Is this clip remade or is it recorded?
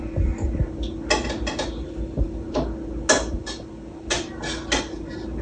recorded